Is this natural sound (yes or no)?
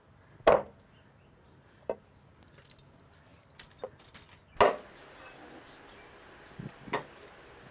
yes